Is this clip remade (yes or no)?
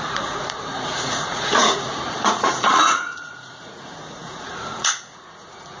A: yes